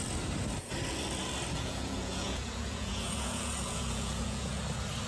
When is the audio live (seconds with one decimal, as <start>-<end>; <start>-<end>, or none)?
0.0-1.5; 4.6-5.1